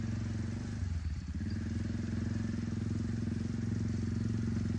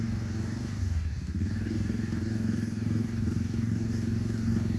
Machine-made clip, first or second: second